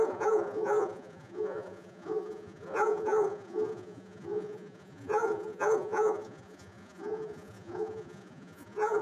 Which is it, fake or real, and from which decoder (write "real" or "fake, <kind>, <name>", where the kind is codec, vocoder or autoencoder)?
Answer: fake, vocoder, Vocos